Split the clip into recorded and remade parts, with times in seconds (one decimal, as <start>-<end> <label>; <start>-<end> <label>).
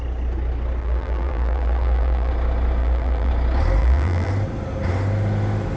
0.0-0.8 recorded; 0.8-2.3 remade; 2.3-2.8 recorded; 2.8-3.3 remade; 3.3-3.8 recorded; 3.8-4.3 remade; 4.3-5.8 recorded